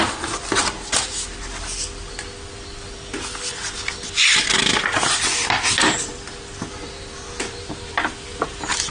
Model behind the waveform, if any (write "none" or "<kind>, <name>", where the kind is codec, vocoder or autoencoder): none